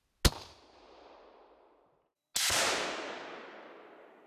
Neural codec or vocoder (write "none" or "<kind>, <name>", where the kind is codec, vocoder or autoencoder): none